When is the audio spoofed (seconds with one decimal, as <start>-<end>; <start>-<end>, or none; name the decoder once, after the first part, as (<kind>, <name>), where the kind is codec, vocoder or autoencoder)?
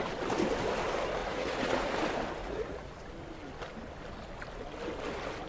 1.2-1.9 (vocoder, Vocos); 2.4-3.1